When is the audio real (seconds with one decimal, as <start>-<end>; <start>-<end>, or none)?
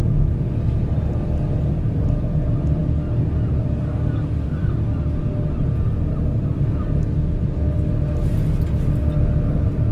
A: 0.0-9.9